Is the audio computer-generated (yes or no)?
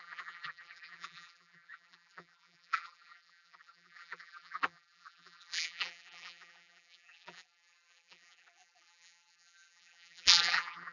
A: yes